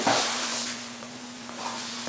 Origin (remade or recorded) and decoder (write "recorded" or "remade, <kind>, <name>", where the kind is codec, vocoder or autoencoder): remade, vocoder, Vocos